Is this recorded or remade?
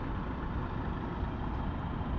recorded